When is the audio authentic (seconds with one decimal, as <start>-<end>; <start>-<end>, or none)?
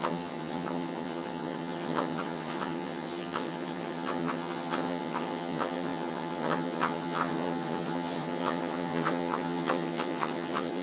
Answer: none